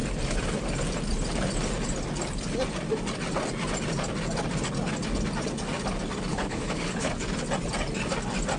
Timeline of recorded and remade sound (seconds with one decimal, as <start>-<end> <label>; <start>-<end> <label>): 0.0-6.3 recorded; 6.3-7.1 remade; 7.1-8.6 recorded